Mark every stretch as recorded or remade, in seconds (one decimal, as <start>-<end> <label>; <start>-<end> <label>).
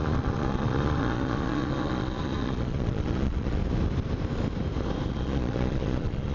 0.0-3.6 remade; 3.6-5.1 recorded; 5.1-6.3 remade